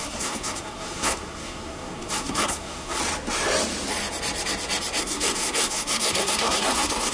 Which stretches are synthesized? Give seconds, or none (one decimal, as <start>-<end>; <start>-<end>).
0.0-3.0; 5.0-7.1

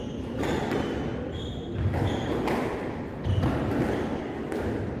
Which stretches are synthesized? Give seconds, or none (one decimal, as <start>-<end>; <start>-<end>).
none

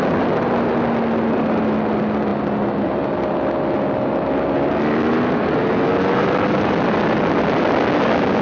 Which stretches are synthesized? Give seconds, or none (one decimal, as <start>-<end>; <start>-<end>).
none

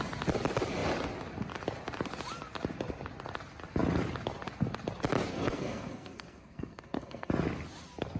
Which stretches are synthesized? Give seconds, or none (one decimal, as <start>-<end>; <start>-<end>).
5.3-7.3